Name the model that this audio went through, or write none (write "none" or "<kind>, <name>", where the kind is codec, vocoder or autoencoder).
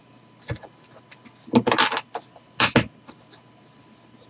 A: none